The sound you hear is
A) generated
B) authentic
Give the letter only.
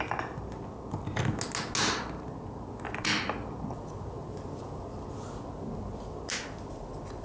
B